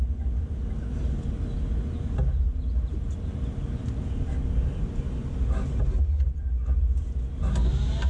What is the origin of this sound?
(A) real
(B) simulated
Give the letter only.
A